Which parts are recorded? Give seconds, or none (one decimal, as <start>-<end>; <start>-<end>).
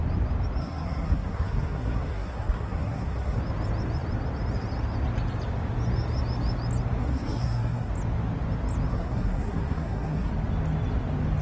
0.0-0.6; 3.4-7.0; 7.9-8.9; 10.3-11.4